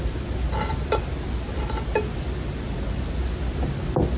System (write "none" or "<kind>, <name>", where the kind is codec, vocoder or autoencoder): none